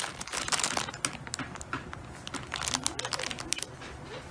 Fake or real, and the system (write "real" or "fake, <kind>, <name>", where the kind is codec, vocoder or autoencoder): real